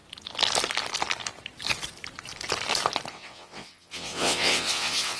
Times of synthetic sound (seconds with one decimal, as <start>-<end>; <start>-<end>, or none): 3.1-5.2